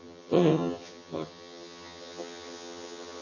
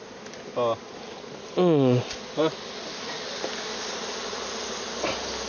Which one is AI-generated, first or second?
first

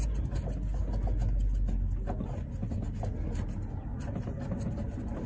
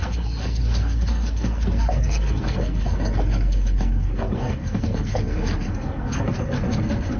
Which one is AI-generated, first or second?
second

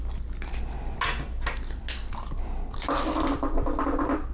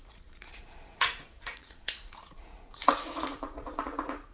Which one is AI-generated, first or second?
second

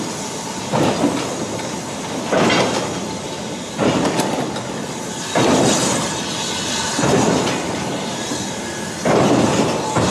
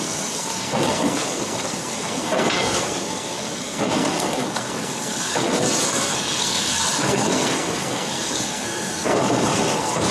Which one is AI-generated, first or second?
second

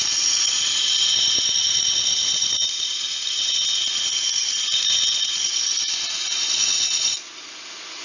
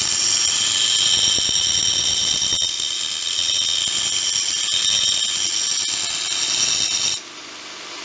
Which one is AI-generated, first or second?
first